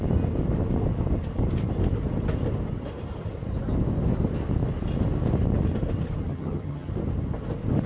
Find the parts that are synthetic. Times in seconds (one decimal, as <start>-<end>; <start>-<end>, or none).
6.3-6.9